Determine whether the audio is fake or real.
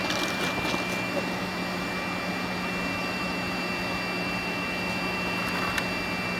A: real